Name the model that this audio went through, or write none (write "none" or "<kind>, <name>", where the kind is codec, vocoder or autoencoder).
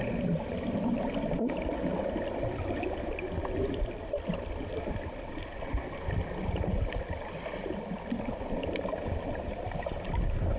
none